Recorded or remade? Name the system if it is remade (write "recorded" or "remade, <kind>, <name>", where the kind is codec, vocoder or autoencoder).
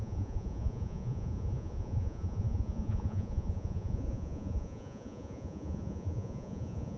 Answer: remade, vocoder, Vocos